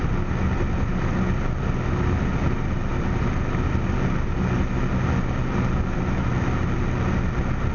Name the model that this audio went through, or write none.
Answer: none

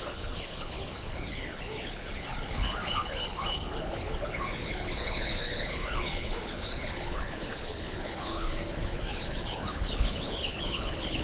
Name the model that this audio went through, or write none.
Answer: codec, HILCodec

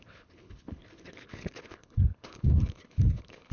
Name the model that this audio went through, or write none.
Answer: codec, HILCodec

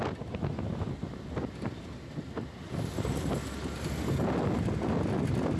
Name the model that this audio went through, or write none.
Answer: none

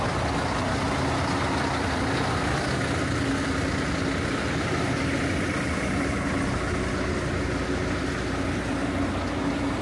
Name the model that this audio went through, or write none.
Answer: none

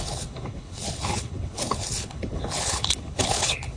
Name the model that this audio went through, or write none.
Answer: codec, HILCodec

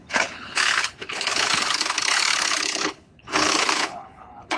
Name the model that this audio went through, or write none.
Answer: codec, HILCodec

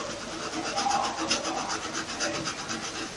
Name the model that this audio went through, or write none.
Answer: none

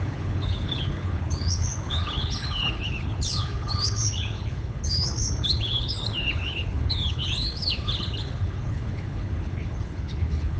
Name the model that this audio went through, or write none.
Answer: codec, HILCodec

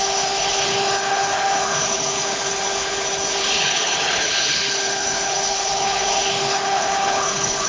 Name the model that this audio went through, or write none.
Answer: codec, HILCodec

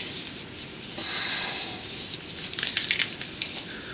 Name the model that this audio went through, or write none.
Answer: none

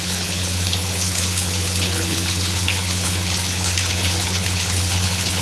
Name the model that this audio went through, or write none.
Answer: codec, HILCodec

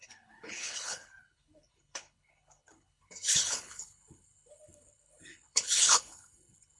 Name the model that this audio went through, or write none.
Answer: codec, HILCodec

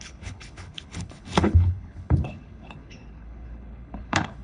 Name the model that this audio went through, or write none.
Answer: codec, HILCodec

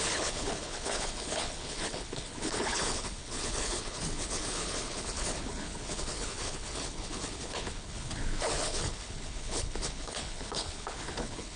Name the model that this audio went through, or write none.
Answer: codec, HILCodec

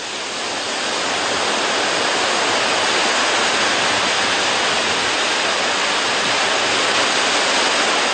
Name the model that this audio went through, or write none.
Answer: none